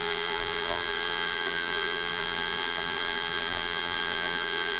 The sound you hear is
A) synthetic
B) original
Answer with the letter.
A